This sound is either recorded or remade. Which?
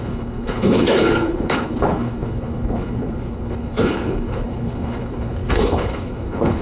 remade